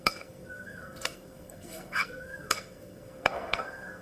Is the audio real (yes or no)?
no